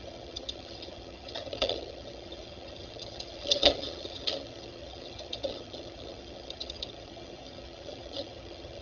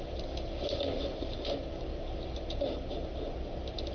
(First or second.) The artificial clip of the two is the first